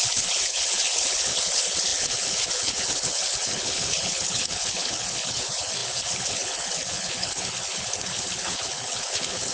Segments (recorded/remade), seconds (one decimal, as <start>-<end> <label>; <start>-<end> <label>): 0.0-9.5 remade